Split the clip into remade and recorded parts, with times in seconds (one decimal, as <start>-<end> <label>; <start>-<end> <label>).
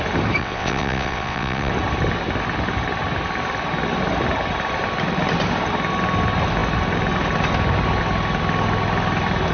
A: 0.0-0.4 recorded; 0.4-1.7 remade; 1.7-9.5 recorded